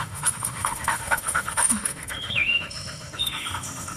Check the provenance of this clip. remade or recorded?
remade